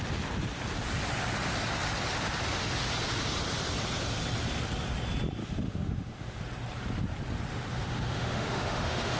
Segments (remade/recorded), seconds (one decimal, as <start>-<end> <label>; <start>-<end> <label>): 0.0-5.4 recorded; 5.4-6.4 remade; 6.4-7.5 recorded; 7.5-9.2 remade